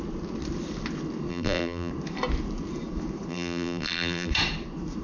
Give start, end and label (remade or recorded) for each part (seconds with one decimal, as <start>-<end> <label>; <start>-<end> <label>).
0.0-1.3 recorded; 1.3-1.9 remade; 1.9-3.3 recorded; 3.3-4.3 remade; 4.3-5.0 recorded